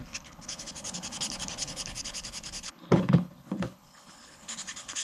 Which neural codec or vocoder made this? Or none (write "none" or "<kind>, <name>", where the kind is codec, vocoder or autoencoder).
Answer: codec, HILCodec